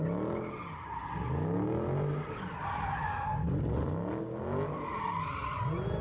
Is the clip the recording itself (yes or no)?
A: yes